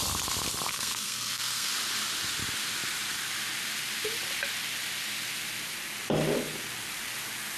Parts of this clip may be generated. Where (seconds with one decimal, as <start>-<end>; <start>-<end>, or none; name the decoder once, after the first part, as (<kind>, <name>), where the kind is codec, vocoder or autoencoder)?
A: 0.7-1.7 (codec, SNAC)